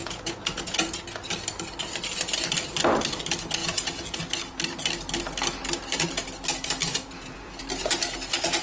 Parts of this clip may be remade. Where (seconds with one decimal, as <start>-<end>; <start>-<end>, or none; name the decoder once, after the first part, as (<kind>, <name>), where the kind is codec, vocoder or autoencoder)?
0.0-1.0 (vocoder, Vocos); 3.6-4.2; 6.9-7.6